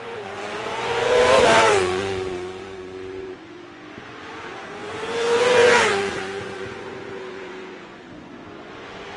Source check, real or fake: fake